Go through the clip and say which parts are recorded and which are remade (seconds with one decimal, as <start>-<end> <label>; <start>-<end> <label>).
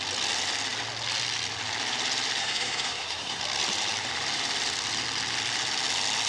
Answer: 0.0-2.4 recorded; 2.4-3.4 remade; 3.4-6.3 recorded